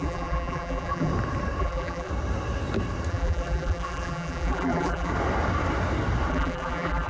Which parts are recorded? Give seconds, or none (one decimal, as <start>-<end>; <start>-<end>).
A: 1.1-1.6; 2.1-3.1; 5.1-6.3

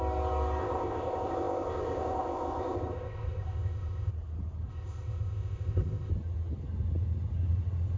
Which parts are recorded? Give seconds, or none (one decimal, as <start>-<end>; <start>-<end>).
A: 0.0-0.6; 4.1-4.7; 6.1-8.0

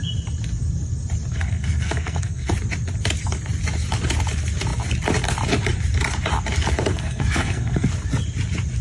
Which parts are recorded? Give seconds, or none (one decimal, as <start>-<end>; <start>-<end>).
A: 0.0-1.3; 2.5-6.9; 7.9-8.8

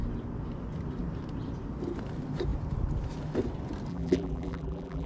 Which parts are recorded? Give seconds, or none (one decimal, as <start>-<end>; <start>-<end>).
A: 0.0-3.9